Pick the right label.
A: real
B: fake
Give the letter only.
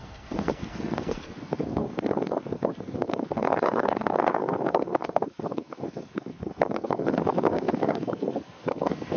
B